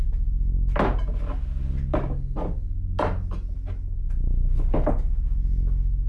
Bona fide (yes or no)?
yes